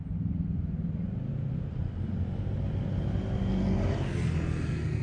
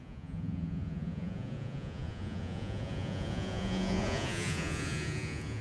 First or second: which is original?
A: first